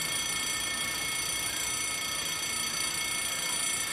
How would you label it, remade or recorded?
recorded